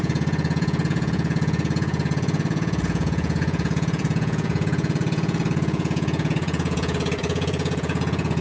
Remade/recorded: remade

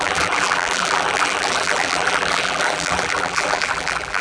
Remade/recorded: remade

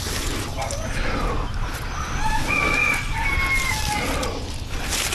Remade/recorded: recorded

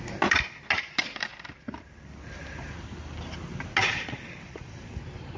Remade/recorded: recorded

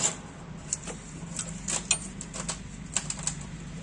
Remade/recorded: recorded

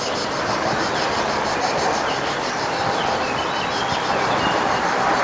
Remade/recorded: recorded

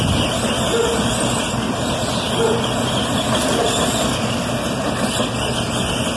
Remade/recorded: recorded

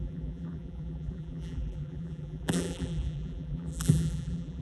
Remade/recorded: remade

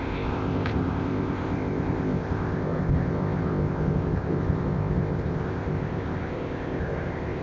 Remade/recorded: remade